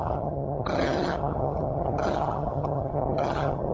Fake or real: fake